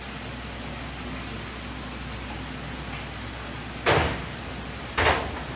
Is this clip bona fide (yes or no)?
yes